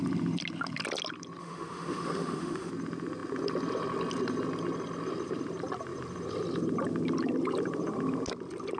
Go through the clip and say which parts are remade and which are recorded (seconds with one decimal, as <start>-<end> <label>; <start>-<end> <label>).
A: 0.0-1.4 recorded; 1.4-2.7 remade; 2.7-8.8 recorded